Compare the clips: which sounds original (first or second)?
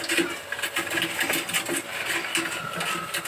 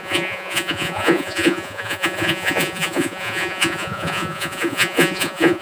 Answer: first